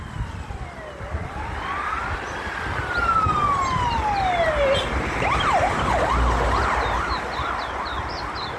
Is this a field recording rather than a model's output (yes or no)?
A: yes